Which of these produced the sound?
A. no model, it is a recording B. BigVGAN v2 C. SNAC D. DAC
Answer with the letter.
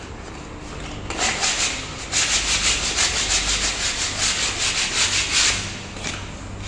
A